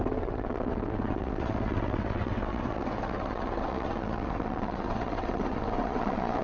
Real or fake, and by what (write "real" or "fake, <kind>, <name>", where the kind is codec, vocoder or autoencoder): fake, vocoder, WaveNeXt